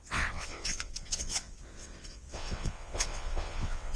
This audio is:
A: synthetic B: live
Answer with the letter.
A